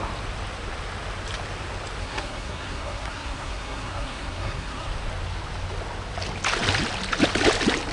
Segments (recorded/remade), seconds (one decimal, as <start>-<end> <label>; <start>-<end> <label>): 0.0-2.0 recorded; 2.0-4.9 remade; 4.9-7.9 recorded